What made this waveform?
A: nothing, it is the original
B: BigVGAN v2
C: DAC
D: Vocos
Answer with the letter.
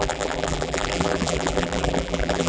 B